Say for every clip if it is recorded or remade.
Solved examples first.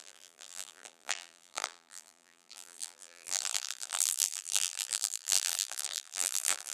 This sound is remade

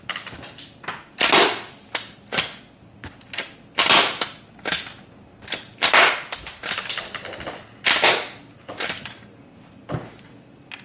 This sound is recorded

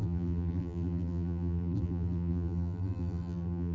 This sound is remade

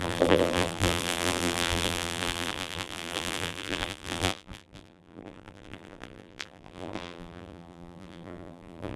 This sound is remade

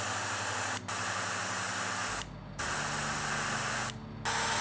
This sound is recorded